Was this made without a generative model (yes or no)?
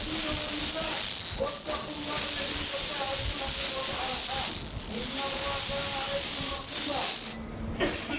yes